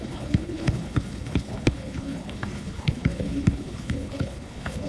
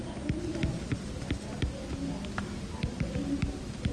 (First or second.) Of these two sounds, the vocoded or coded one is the first